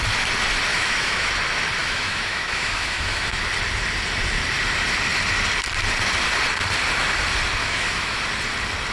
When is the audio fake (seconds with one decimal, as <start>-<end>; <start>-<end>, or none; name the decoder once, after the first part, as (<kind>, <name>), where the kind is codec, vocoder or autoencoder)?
0.7-1.3 (autoencoder, DAC-VAE); 1.8-3.4; 7.6-8.2